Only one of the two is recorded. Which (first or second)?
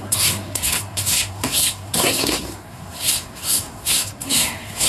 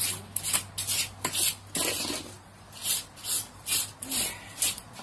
second